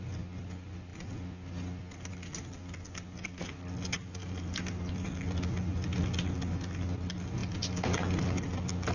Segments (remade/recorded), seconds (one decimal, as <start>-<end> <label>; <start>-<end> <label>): 0.0-4.2 recorded; 4.2-5.1 remade; 5.1-8.9 recorded